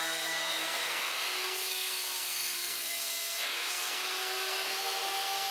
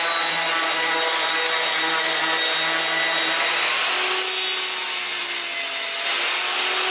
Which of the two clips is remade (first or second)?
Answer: first